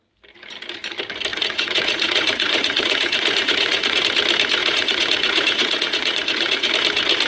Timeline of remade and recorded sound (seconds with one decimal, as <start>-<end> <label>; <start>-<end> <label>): 0.0-1.3 recorded; 1.3-4.0 remade; 4.0-4.6 recorded; 4.6-6.7 remade; 6.7-7.3 recorded